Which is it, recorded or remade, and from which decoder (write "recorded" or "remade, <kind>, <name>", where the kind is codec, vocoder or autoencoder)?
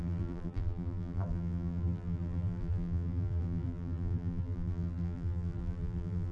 remade, vocoder, BigVGAN v2